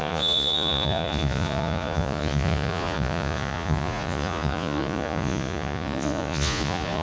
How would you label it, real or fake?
fake